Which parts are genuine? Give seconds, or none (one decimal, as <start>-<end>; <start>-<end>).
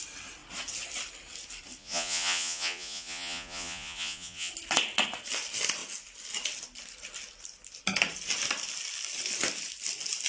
0.0-1.8; 4.5-10.3